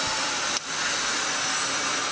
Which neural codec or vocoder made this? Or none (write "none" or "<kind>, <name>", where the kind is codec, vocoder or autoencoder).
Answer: none